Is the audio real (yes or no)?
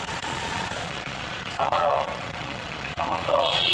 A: no